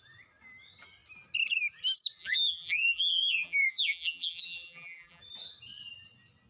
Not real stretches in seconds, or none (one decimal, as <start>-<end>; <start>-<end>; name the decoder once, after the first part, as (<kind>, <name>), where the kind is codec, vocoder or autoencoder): 2.2-5.2 (vocoder, BigVGAN v2)